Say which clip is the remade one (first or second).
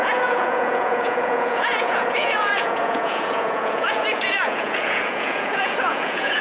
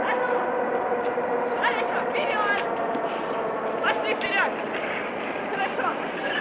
first